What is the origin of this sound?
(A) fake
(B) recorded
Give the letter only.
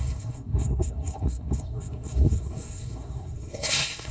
A